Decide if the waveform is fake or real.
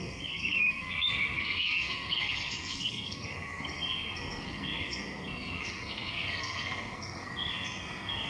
fake